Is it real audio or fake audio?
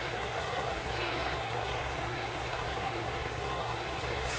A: fake